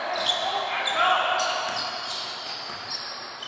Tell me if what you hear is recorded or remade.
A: recorded